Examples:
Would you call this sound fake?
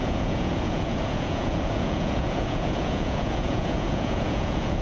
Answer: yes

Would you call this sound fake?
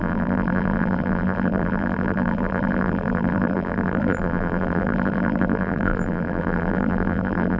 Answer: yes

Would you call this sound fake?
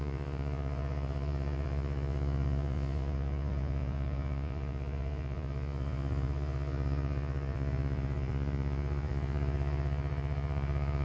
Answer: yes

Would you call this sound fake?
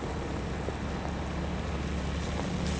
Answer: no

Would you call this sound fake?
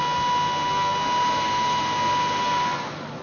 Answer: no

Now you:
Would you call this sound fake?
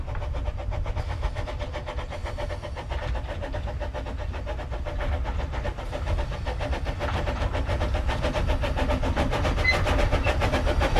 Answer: no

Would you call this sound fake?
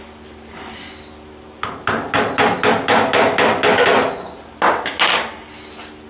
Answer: no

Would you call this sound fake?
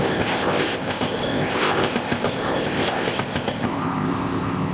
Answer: yes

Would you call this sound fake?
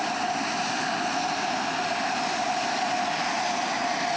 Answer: no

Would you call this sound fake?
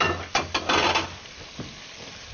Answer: no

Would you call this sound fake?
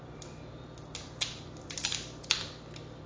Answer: no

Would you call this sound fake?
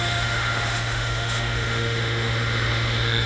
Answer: yes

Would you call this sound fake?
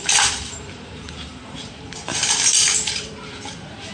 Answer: yes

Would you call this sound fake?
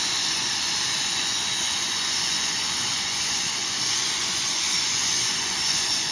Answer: yes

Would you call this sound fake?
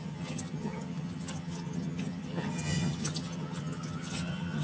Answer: yes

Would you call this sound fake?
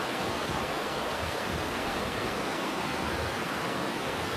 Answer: yes